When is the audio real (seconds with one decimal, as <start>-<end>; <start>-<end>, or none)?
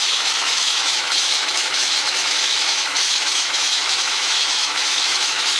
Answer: none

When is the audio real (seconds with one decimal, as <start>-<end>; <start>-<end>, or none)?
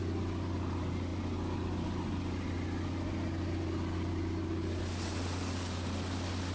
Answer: 0.0-6.5